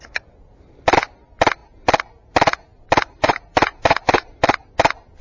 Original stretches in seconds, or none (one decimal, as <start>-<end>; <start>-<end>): 0.0-5.2